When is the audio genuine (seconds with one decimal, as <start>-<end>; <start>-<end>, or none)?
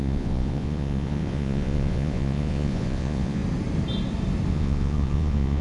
3.4-4.5